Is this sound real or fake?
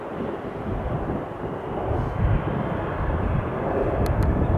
real